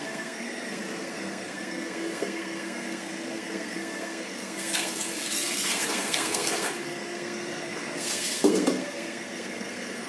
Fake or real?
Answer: fake